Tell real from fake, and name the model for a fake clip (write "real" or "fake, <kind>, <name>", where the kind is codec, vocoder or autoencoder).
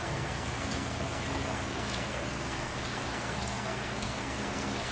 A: fake, codec, SNAC